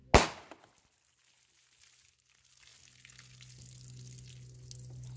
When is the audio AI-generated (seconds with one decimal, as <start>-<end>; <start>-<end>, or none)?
none